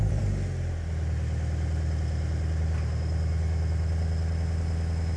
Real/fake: real